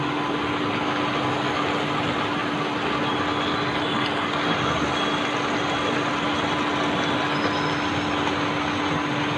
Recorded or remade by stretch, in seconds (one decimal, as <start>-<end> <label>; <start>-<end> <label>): 0.0-9.4 recorded